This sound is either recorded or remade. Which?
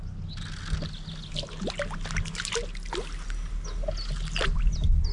recorded